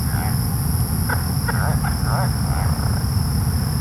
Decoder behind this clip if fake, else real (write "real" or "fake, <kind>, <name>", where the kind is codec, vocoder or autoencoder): real